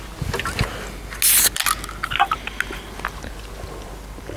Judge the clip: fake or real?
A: real